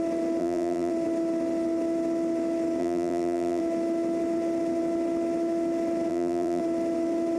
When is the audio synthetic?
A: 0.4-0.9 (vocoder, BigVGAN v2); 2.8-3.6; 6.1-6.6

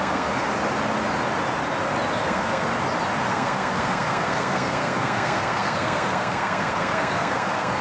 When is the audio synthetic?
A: 0.0-0.5 (codec, SNAC); 2.1-2.7; 3.3-7.8

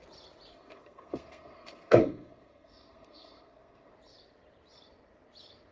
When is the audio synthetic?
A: 0.5-3.9 (codec, SNAC)